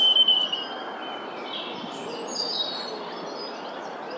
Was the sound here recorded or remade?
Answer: recorded